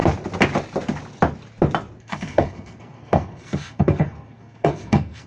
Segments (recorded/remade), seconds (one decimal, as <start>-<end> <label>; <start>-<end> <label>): 0.0-2.0 recorded; 2.0-5.3 remade